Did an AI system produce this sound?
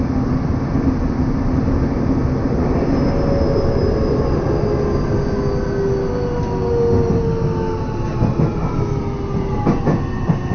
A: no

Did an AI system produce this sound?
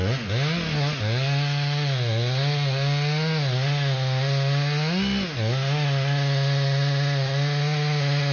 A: no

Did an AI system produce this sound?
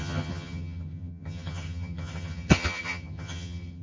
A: yes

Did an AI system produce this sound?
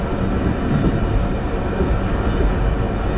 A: no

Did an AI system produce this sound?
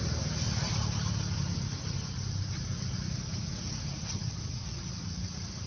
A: no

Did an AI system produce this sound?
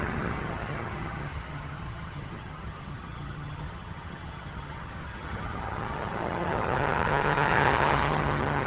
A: yes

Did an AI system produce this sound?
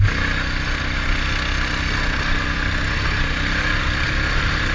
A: no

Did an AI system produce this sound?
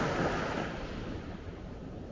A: no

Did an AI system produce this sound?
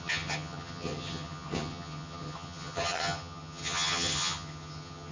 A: yes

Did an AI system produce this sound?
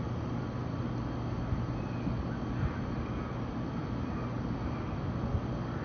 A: no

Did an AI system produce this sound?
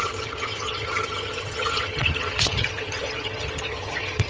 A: yes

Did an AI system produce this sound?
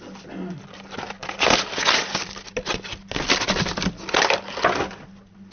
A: no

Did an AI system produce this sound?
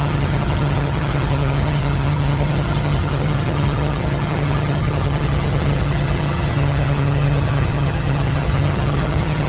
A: yes